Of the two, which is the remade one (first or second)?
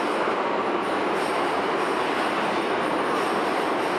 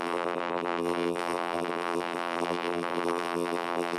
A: second